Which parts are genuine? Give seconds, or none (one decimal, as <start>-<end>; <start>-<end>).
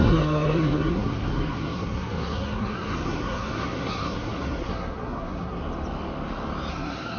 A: 5.6-6.7